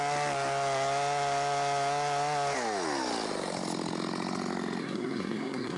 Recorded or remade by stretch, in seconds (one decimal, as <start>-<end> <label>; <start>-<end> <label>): 0.0-4.8 recorded; 4.8-5.8 remade